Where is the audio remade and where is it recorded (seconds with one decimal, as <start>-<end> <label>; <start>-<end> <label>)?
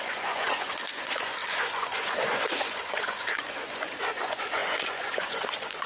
0.0-5.9 remade